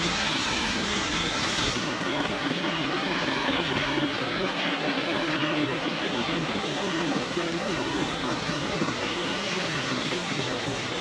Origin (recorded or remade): remade